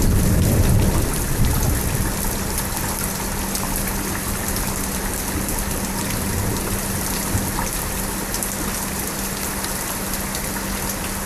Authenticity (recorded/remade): recorded